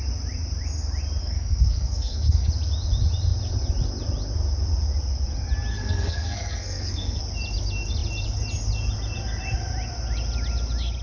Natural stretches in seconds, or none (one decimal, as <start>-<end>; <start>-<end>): 0.0-1.2; 2.5-5.7; 7.2-11.0

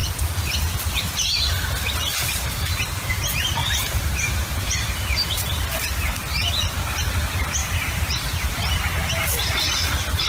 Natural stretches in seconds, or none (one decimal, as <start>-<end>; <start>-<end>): 1.3-3.6; 5.3-7.6; 8.8-10.3